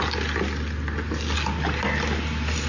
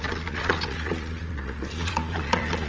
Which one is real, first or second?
first